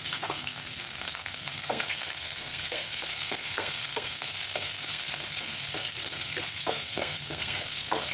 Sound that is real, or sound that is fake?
fake